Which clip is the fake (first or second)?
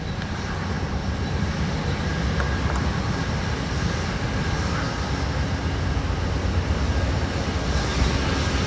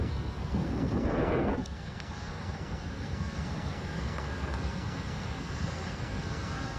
second